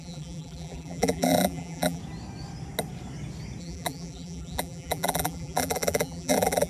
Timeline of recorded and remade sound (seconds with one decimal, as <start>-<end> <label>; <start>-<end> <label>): 0.0-2.0 remade; 2.0-3.6 recorded; 3.6-6.7 remade